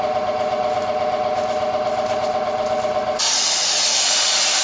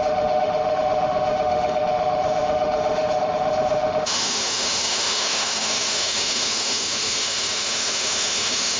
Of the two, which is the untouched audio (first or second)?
first